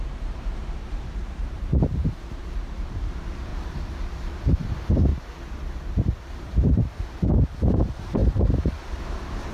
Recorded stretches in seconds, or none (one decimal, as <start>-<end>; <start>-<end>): 1.7-2.4; 5.1-6.3